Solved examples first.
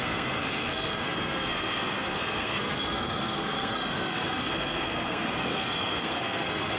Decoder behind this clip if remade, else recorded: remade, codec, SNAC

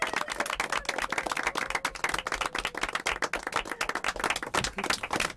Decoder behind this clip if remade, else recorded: recorded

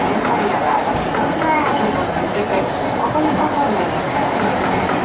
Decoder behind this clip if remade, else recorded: recorded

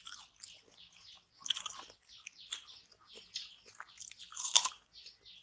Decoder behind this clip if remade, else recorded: recorded